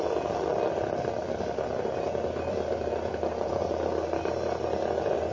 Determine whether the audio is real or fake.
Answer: real